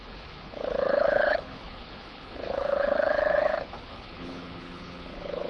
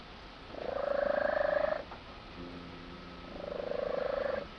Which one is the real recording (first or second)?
second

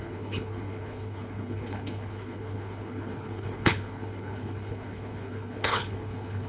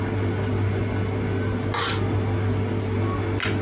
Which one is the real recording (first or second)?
second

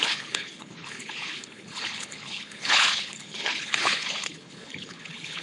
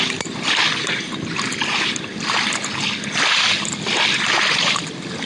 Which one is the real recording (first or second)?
second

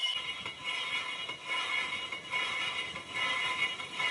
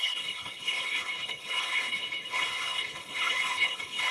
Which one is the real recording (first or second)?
first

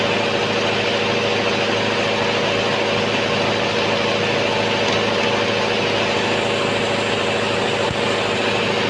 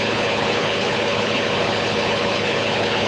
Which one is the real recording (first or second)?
first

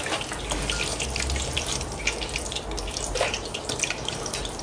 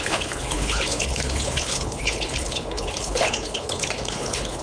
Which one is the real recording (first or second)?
first